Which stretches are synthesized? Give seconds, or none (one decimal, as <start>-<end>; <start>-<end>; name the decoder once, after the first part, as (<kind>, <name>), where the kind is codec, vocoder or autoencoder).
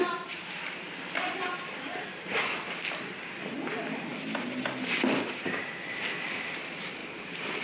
none